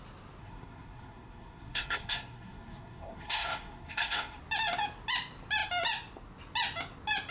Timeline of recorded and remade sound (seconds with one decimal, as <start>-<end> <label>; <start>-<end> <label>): 0.0-0.4 recorded; 0.4-4.4 remade; 4.4-7.3 recorded